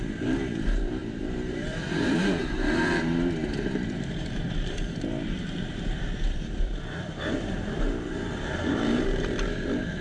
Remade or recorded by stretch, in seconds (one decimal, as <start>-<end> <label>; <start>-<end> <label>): 0.0-10.0 remade